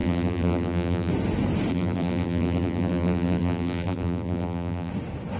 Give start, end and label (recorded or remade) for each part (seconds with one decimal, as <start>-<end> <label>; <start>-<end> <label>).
0.0-1.1 remade; 1.1-1.7 recorded; 1.7-4.9 remade; 4.9-5.4 recorded